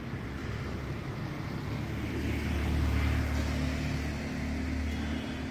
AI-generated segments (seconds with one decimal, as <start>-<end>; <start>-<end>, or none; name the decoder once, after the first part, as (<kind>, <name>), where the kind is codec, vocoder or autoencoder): 0.4-1.2 (vocoder, BigVGAN v2); 2.6-3.2